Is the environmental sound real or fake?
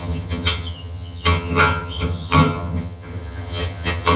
fake